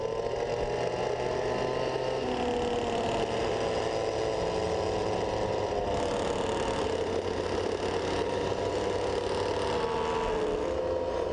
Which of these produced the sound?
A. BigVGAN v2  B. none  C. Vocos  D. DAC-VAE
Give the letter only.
B